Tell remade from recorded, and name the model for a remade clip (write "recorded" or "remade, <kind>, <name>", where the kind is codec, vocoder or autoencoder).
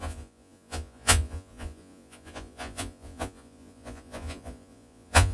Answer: remade, vocoder, Vocos